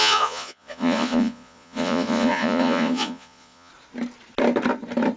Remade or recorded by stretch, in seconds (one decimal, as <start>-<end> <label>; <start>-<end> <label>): 0.0-3.7 remade; 3.7-5.2 recorded

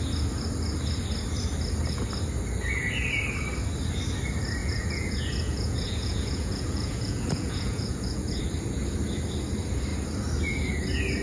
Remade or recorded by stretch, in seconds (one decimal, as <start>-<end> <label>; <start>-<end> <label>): 0.0-4.6 recorded; 4.6-8.4 remade; 8.4-11.2 recorded

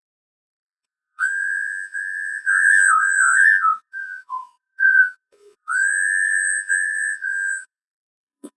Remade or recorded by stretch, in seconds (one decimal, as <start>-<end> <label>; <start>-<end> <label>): 0.0-8.6 remade

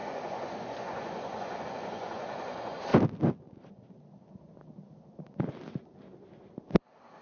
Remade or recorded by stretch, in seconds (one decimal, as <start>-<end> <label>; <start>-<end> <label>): 0.0-2.9 remade; 2.9-7.2 recorded

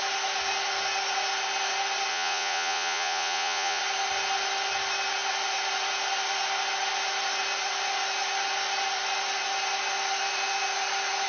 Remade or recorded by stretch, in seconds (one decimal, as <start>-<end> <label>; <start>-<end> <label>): 0.0-2.1 recorded; 2.1-3.8 remade; 3.8-11.3 recorded